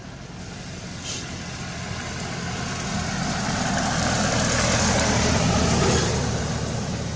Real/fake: real